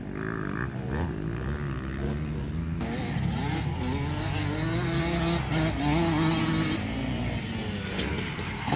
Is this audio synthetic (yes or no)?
no